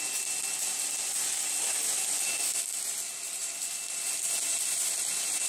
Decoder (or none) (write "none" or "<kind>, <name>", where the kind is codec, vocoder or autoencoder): none